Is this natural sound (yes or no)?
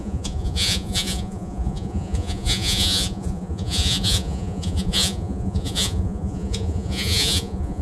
no